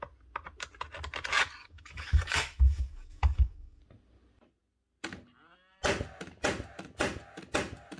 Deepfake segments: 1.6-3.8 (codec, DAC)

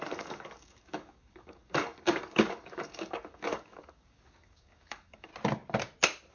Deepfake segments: 0.0-5.3 (codec, DAC)

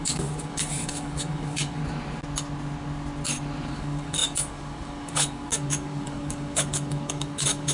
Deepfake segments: 0.0-1.8 (codec, DAC); 3.7-7.7